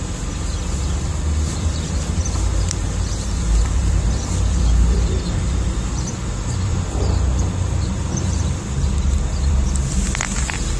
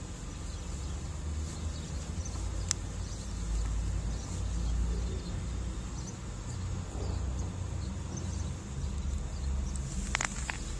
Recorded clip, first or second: second